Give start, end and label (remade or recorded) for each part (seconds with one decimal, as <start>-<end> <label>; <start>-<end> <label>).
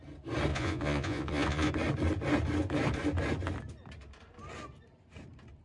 0.0-0.5 recorded; 0.5-1.7 remade; 1.7-5.6 recorded